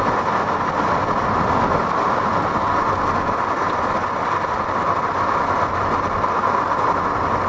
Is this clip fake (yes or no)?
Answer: no